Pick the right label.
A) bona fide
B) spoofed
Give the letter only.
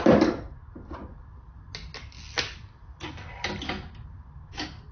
A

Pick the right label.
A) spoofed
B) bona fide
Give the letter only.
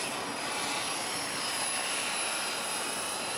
B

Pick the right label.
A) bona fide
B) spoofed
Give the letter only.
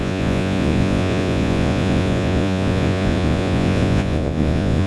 B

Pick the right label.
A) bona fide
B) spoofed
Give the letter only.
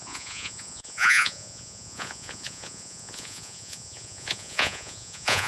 B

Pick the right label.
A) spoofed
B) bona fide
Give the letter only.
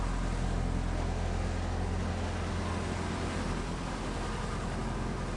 B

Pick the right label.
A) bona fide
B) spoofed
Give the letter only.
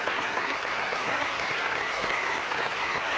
B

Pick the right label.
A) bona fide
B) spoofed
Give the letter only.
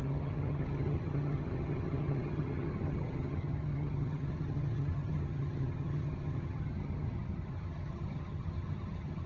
B